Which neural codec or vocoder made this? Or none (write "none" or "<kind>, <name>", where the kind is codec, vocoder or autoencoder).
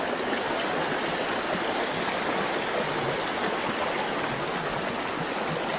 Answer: none